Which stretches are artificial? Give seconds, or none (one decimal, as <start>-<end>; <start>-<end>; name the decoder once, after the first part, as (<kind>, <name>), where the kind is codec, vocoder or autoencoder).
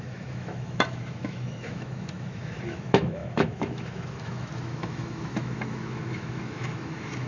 0.0-7.3 (autoencoder, DAC-VAE)